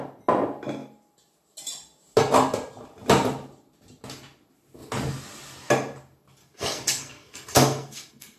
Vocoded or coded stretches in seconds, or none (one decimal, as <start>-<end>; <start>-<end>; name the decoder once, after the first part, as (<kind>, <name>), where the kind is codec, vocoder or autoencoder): 6.4-8.4 (codec, SNAC)